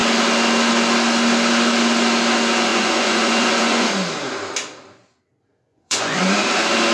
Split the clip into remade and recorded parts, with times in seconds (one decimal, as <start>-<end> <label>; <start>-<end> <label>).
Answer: 0.0-2.7 recorded; 2.7-3.9 remade; 3.9-5.7 recorded; 5.7-6.4 remade; 6.4-6.9 recorded